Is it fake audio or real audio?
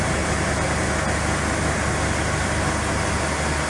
real